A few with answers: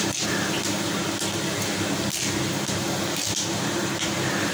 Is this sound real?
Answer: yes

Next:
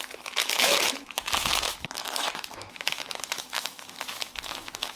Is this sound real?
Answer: no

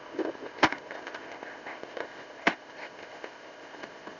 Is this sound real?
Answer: no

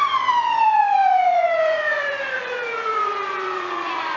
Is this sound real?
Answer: no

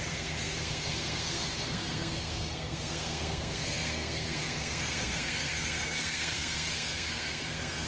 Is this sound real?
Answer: no